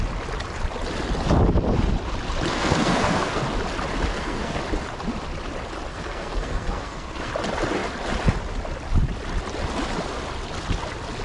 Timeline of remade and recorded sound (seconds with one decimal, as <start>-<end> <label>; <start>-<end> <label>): 0.0-2.5 recorded; 2.5-3.4 remade; 3.4-4.1 recorded; 4.1-4.6 remade; 4.6-5.9 recorded; 5.9-7.3 remade; 7.3-11.2 recorded